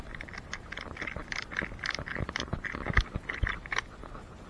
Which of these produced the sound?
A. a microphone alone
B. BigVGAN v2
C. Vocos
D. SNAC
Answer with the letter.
A